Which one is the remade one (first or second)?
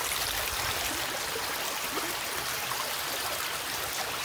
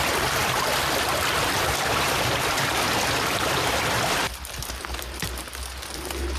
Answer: second